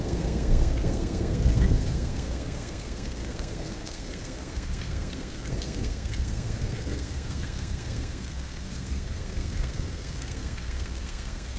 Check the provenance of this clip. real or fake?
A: fake